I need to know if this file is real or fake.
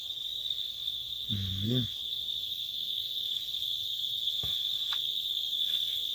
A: fake